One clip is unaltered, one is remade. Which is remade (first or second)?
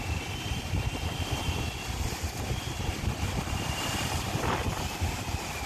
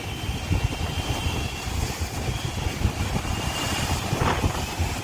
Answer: first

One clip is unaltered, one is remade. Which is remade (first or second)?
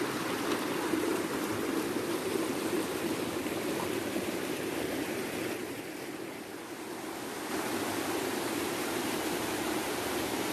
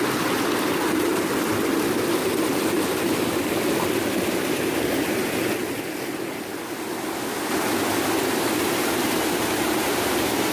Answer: first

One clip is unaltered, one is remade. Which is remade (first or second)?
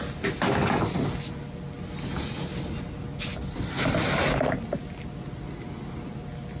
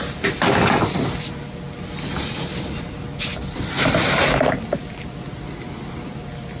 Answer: second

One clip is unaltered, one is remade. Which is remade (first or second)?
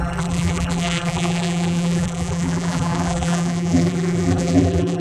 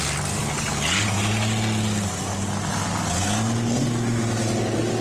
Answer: first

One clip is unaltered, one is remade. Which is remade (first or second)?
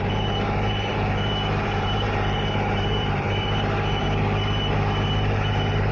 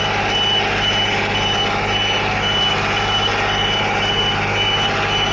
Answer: first